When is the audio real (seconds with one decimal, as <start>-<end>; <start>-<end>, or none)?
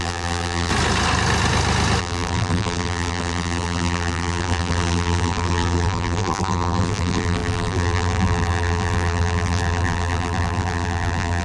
0.7-2.0